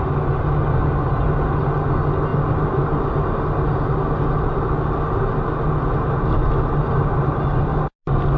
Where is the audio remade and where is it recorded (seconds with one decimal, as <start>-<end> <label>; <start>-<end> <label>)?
0.0-8.4 recorded